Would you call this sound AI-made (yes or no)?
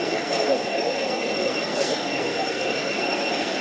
yes